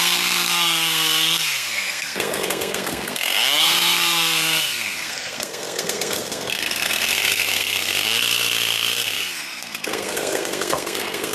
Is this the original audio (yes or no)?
no